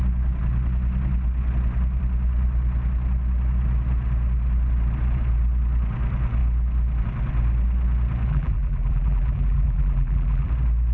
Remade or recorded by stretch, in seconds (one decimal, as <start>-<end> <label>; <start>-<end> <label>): 0.0-8.3 recorded; 8.3-10.5 remade; 10.5-10.9 recorded